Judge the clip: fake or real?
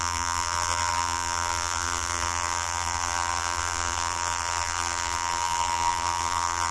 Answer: fake